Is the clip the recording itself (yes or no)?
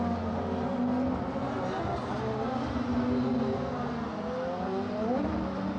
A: yes